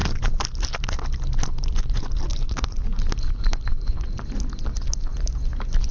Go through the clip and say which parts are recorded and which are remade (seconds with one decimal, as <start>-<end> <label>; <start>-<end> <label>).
0.0-2.3 recorded; 2.3-3.7 remade; 3.7-5.9 recorded